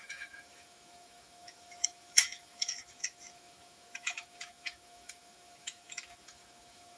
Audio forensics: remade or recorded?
remade